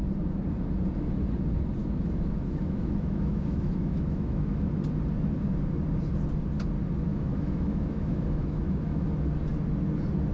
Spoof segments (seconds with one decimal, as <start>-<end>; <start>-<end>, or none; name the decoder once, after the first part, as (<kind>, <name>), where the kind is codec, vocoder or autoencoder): 1.8-4.7 (autoencoder, DAC-VAE); 7.1-9.1